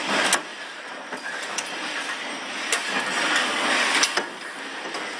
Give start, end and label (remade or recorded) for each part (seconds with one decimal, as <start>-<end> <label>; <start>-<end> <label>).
0.0-0.5 recorded; 0.5-3.0 remade; 3.0-5.2 recorded